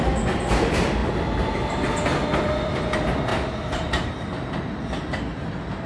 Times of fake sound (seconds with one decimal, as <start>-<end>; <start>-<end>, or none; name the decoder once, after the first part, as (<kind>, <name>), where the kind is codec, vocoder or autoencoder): none

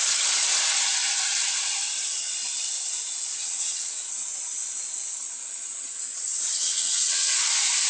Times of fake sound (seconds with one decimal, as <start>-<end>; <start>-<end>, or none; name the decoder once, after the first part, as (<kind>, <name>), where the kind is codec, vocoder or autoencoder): 3.3-4.1 (vocoder, WaveNeXt); 6.1-7.3

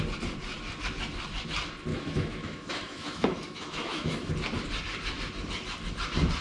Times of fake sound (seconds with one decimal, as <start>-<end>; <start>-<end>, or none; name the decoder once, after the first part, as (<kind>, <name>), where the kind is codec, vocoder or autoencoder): 1.9-4.3 (autoencoder, DAC-VAE)

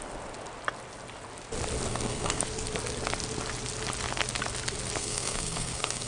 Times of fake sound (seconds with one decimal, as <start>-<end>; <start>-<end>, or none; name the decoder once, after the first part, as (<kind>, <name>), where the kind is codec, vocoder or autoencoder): 1.9-2.4 (codec, SNAC); 5.0-6.1